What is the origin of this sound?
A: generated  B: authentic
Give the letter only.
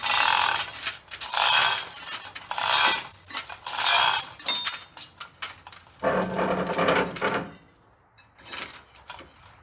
B